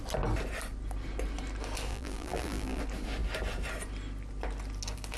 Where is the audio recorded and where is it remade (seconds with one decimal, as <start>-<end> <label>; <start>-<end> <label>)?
0.0-1.9 recorded; 1.9-2.8 remade; 2.8-5.2 recorded